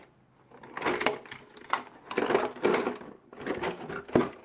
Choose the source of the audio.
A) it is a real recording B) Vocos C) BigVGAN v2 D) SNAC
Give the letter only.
A